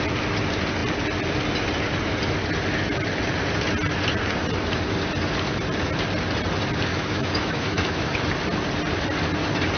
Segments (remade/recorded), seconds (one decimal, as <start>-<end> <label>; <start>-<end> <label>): 0.0-6.9 recorded; 6.9-8.2 remade; 8.2-9.8 recorded